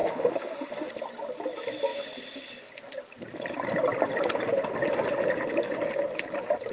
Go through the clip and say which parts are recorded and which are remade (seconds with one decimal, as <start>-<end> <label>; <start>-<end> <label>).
0.0-0.9 remade; 0.9-6.7 recorded